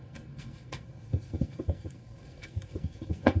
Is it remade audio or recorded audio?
remade